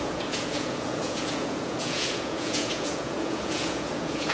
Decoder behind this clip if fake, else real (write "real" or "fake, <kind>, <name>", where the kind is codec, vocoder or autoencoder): fake, vocoder, Vocos